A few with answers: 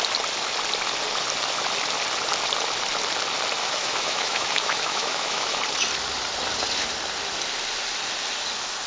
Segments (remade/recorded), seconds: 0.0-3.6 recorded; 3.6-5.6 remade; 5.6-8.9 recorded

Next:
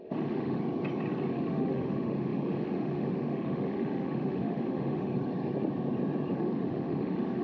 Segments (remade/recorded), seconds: 0.0-0.6 remade; 0.6-1.3 recorded; 1.3-5.1 remade; 5.1-6.3 recorded; 6.3-7.4 remade